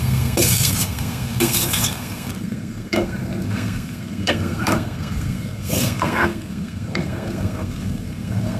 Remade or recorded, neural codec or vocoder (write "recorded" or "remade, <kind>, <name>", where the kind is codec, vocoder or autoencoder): remade, codec, SNAC